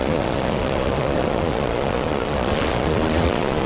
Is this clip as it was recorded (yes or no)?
no